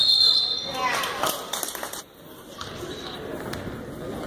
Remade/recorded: recorded